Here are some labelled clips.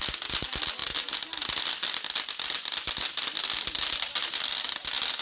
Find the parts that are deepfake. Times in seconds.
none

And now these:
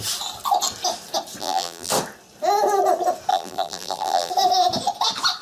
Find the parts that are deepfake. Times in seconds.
1.4-1.9 (vocoder, BigVGAN v2); 3.3-4.3

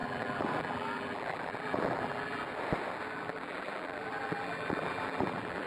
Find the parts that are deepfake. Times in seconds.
0.0-2.4 (vocoder, BigVGAN v2); 3.1-5.7

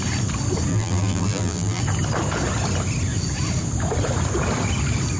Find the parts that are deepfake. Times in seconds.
0.7-1.8 (vocoder, BigVGAN v2)

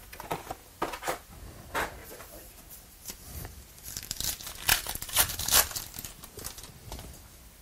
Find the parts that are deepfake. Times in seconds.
0.6-1.3 (vocoder, BigVGAN v2); 2.0-3.0; 4.7-5.8

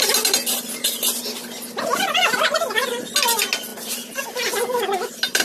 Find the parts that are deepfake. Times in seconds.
none

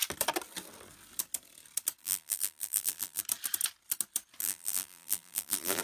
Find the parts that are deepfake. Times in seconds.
2.0-3.2 (vocoder, BigVGAN v2); 4.4-5.8

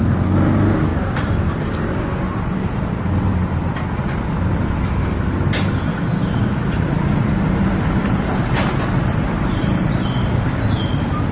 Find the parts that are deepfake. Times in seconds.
0.9-1.6 (vocoder, BigVGAN v2); 5.9-9.9